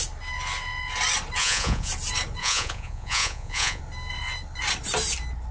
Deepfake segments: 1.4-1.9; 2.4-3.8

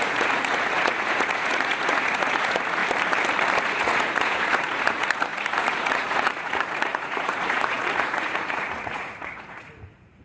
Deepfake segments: 0.0-2.8; 3.6-10.2

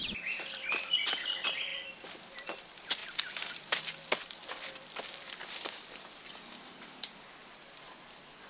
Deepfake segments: none